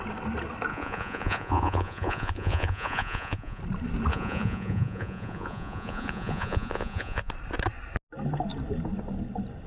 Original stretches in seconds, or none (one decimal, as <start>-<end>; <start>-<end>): 0.0-0.7; 3.6-4.1; 7.3-9.7